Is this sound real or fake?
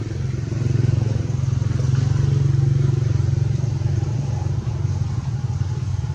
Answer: real